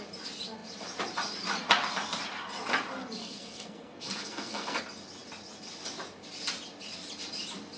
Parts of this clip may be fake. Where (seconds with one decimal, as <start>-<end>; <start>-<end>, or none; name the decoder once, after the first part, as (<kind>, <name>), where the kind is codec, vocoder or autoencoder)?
3.2-4.8 (codec, SNAC)